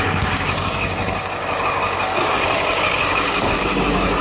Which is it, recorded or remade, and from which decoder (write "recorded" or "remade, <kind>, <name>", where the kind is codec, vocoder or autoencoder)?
remade, codec, DAC